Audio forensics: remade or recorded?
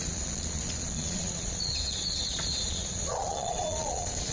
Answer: remade